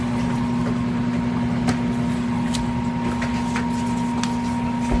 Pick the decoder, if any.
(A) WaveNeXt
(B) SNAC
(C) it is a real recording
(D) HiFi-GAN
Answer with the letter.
C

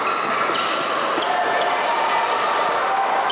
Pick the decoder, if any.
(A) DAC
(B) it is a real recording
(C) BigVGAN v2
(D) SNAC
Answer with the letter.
B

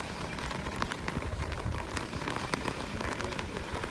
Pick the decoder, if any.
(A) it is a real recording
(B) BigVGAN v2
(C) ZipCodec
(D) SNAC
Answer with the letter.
B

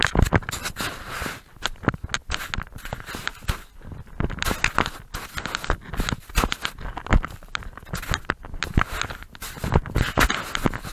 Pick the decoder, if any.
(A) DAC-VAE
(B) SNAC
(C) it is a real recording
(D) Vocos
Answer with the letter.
C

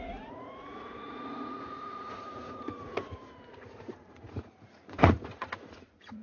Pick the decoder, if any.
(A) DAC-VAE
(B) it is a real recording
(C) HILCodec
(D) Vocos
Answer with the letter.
D